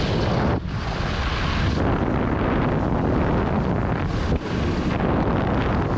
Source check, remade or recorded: recorded